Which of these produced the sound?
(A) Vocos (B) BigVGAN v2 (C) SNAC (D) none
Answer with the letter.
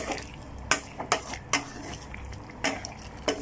D